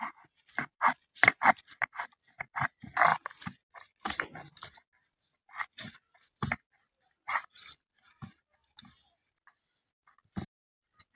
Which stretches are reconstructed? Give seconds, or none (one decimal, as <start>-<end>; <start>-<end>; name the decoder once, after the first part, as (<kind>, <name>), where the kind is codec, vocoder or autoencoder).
0.0-3.1 (vocoder, BigVGAN v2); 7.3-11.1

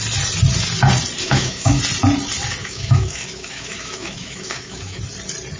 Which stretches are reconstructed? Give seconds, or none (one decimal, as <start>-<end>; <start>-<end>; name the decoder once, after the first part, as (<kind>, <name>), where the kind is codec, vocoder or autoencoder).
1.2-1.8 (autoencoder, DAC-VAE); 2.6-5.0

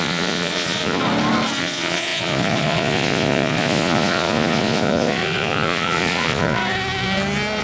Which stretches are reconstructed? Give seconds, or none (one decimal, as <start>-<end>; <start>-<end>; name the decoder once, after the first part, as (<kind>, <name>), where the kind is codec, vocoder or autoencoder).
0.0-1.0 (vocoder, Vocos); 1.6-6.6

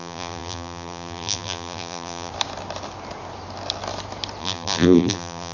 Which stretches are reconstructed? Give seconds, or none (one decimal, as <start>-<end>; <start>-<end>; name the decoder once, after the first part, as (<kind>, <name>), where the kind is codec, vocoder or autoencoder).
0.0-2.3 (vocoder, BigVGAN v2); 4.4-5.5